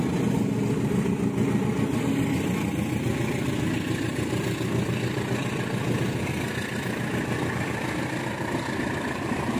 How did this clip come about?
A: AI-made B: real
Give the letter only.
B